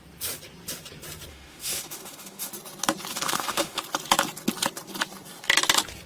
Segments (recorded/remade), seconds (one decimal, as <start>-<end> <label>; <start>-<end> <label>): 0.0-1.3 recorded; 1.3-2.5 remade; 2.5-3.1 recorded; 3.1-3.8 remade; 3.8-6.1 recorded